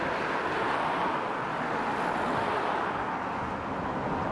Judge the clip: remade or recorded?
recorded